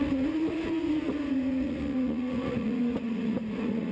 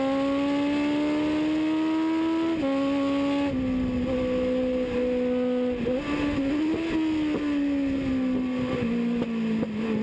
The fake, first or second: first